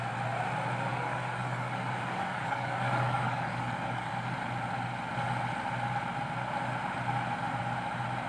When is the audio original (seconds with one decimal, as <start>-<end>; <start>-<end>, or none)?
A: 0.0-0.9; 4.3-8.3